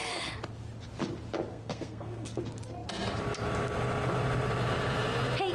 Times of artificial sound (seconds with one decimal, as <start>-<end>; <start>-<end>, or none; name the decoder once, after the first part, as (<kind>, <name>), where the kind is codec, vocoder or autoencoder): 1.5-2.4 (codec, SNAC)